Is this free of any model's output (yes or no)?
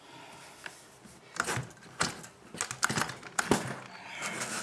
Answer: yes